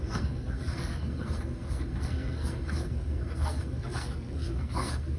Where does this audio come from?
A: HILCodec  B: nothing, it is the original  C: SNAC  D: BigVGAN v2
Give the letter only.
C